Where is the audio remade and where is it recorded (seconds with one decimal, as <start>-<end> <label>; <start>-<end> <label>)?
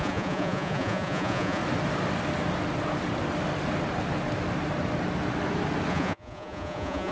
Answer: 0.0-1.6 remade; 1.6-5.9 recorded; 5.9-7.1 remade